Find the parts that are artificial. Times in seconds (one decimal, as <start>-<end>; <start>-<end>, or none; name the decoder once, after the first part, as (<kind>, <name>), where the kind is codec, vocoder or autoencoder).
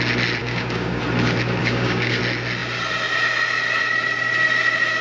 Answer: 0.4-1.0 (codec, DAC); 1.6-2.2